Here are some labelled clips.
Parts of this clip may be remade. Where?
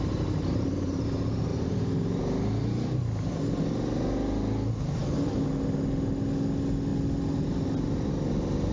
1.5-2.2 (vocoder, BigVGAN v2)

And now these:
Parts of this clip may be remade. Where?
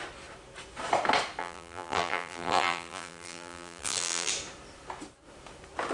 1.4-4.3 (vocoder, BigVGAN v2)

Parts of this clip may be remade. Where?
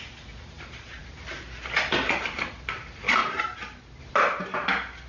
3.2-4.0 (vocoder, BigVGAN v2)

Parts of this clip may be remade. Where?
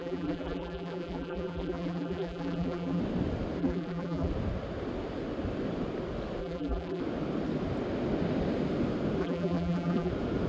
0.0-3.0 (vocoder, BigVGAN v2); 3.6-4.3; 6.4-7.0; 9.2-10.1